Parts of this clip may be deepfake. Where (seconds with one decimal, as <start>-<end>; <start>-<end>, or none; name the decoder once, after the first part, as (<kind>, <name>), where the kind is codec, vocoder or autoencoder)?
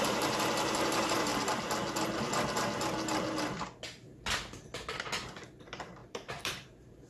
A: 0.0-1.3 (vocoder, BigVGAN v2); 5.6-7.1